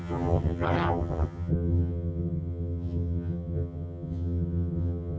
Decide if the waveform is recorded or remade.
remade